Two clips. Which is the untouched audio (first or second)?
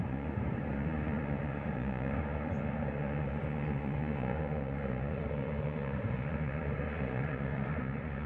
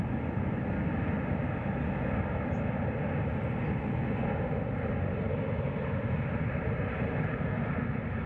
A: second